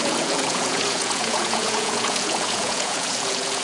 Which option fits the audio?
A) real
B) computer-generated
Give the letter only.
B